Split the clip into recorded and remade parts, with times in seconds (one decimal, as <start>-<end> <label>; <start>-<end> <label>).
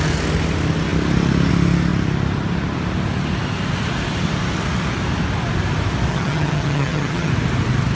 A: 0.0-6.1 recorded; 6.1-7.3 remade; 7.3-8.0 recorded